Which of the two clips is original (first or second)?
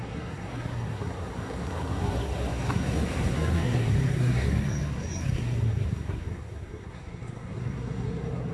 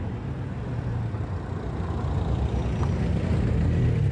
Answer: second